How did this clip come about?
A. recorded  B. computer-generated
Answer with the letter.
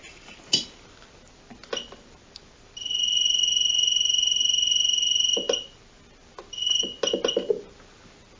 A